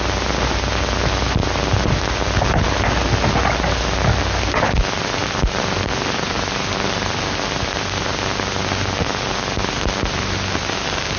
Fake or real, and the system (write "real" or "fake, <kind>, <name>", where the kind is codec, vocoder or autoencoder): real